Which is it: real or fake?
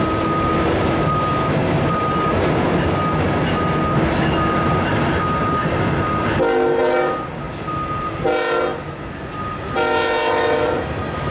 real